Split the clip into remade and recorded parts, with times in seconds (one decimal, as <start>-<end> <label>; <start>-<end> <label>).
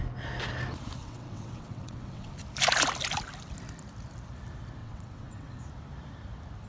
0.0-1.0 recorded; 1.0-2.3 remade; 2.3-4.8 recorded; 4.8-5.6 remade; 5.6-6.7 recorded